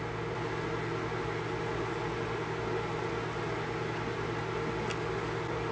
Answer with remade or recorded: recorded